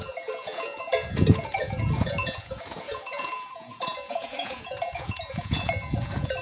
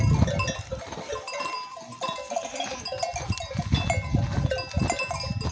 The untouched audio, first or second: second